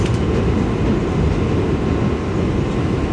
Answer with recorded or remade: recorded